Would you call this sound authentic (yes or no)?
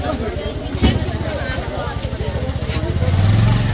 yes